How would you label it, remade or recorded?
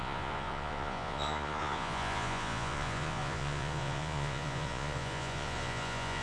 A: remade